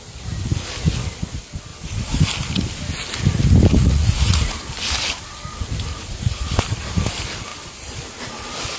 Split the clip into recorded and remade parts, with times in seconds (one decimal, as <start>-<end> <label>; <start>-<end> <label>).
0.0-3.7 recorded; 3.7-4.6 remade; 4.6-5.9 recorded; 5.9-6.6 remade; 6.6-8.8 recorded